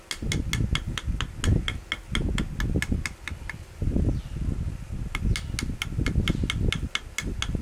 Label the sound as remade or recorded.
recorded